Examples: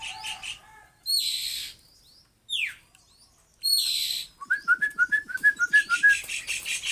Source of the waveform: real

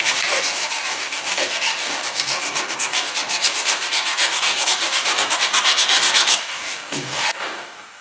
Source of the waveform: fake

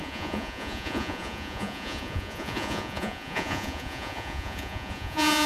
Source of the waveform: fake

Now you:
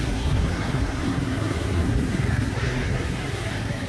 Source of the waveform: fake